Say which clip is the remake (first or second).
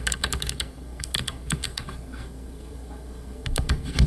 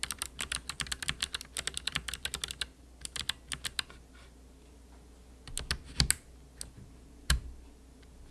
first